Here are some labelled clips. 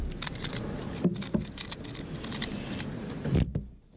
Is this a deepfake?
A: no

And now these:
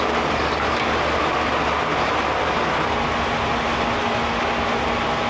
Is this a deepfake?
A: no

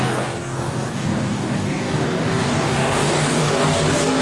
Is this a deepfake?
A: yes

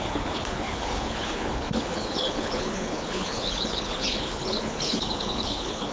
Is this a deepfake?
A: yes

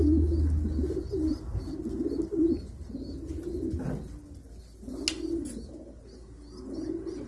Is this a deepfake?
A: no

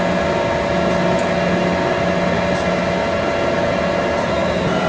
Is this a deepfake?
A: no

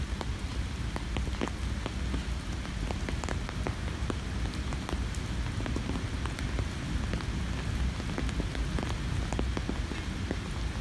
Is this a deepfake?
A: no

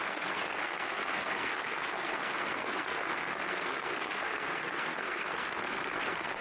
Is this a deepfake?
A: yes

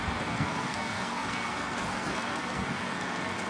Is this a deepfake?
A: yes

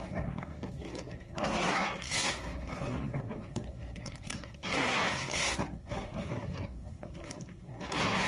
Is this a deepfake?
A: yes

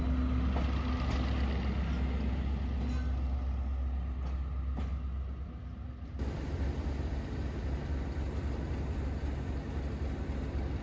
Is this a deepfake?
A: no